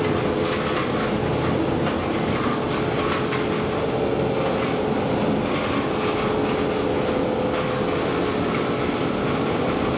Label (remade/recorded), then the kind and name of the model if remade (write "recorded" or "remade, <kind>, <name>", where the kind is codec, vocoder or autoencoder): recorded